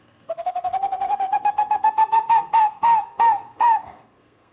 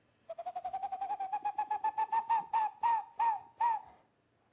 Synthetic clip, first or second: first